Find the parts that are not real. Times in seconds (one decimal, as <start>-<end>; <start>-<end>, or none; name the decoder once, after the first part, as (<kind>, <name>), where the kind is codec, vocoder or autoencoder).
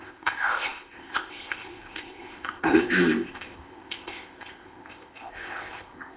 0.0-6.2 (codec, ZipCodec)